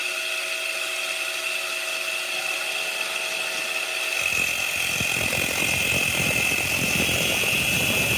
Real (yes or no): yes